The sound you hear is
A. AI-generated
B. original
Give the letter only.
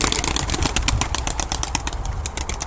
B